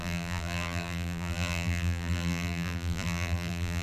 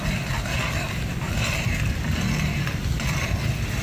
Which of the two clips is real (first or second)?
second